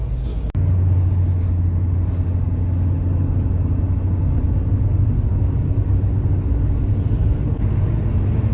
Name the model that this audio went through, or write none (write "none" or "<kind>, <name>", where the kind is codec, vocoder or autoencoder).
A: none